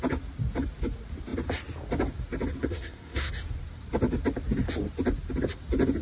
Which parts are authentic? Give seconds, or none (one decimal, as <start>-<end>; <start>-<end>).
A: 0.0-2.6; 3.3-6.0